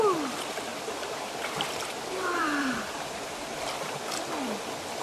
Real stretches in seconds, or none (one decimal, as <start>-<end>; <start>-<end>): 0.0-0.7; 3.6-5.0